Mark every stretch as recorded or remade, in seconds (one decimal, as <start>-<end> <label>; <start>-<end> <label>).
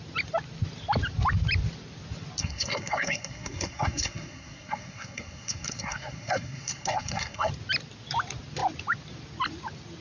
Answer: 0.0-2.4 recorded; 2.4-7.5 remade; 7.5-10.0 recorded